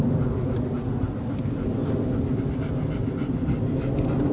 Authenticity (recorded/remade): recorded